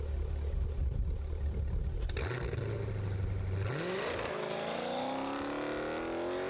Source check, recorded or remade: recorded